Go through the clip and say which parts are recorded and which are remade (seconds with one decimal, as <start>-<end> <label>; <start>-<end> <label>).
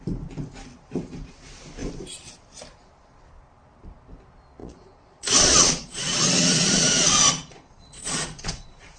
0.0-4.6 recorded; 4.6-9.0 remade